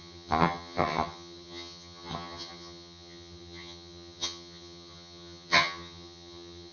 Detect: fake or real fake